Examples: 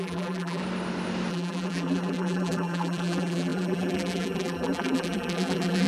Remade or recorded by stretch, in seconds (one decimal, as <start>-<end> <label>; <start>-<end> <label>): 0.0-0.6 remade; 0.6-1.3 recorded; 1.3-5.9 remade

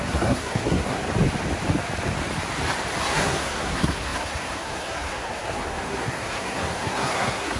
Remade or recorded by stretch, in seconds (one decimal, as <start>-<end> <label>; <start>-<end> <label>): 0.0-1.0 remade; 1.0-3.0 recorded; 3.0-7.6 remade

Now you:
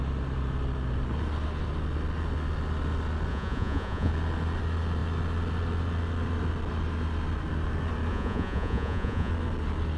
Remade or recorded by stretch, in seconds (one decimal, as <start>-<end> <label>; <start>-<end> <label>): 0.0-3.3 recorded; 3.3-4.1 remade; 4.1-8.1 recorded; 8.1-9.3 remade; 9.3-10.0 recorded

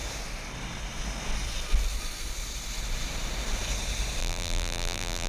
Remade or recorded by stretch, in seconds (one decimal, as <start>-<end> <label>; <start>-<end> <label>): 0.0-4.2 recorded; 4.2-5.3 remade

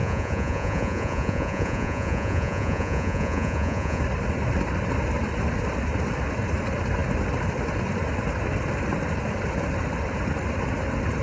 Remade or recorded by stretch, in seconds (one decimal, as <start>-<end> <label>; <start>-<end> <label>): 0.0-4.0 remade; 4.0-11.2 recorded